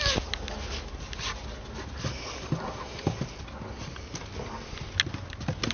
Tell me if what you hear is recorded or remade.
recorded